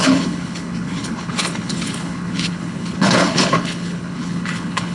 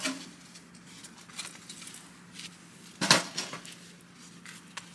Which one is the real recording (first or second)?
second